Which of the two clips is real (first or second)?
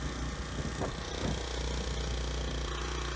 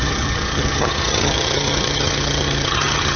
first